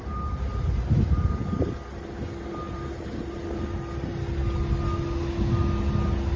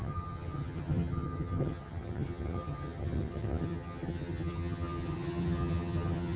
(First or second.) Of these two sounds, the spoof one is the second